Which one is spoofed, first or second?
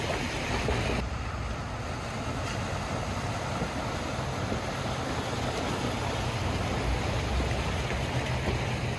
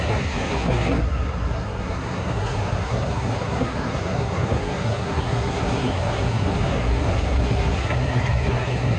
second